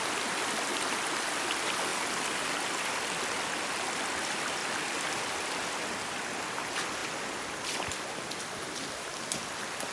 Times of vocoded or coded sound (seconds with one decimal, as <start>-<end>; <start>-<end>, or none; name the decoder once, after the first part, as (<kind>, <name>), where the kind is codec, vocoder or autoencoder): none